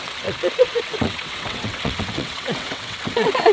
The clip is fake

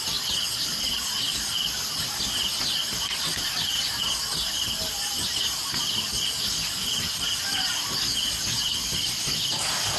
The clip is real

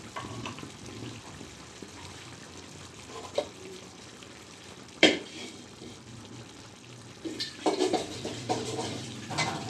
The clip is fake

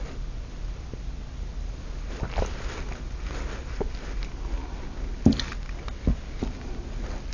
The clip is real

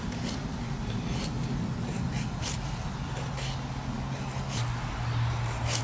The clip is real